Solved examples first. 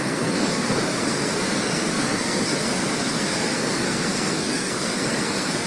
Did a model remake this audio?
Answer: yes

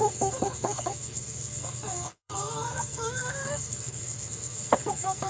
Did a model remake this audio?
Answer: yes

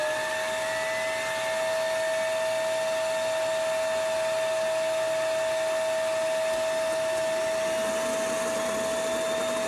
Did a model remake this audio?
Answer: no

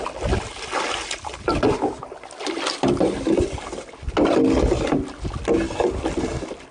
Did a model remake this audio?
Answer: no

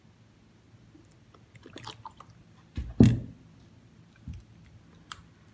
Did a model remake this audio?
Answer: no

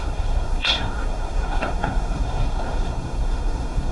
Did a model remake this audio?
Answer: yes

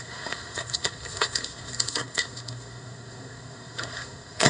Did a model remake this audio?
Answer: yes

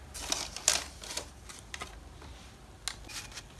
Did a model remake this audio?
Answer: no